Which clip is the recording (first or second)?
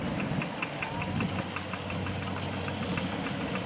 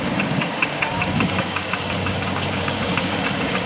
first